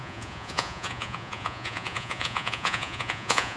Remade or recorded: remade